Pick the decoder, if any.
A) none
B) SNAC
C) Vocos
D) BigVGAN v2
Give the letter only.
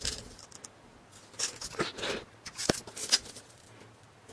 A